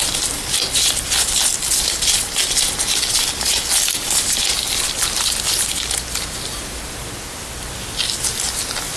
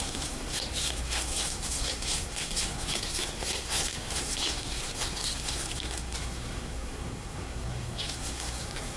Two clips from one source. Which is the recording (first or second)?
first